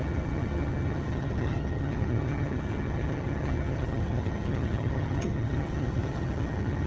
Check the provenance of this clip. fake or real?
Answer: fake